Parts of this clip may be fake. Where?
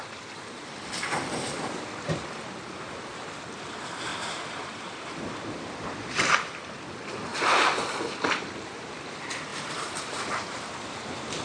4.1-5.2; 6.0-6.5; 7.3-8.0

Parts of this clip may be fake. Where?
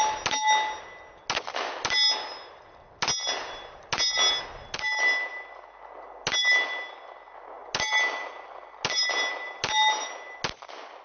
none